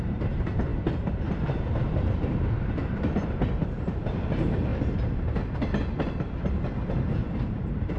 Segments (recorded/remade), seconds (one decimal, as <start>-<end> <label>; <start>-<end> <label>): 0.0-0.7 remade; 0.7-1.3 recorded; 1.3-4.7 remade; 4.7-7.1 recorded; 7.1-8.0 remade